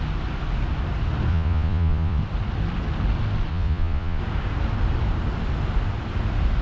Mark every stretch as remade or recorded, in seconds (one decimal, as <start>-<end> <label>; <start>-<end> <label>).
0.0-1.3 recorded; 1.3-2.2 remade; 2.2-3.5 recorded; 3.5-4.2 remade; 4.2-6.6 recorded